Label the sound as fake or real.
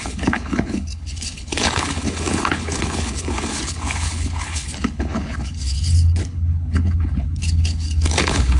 fake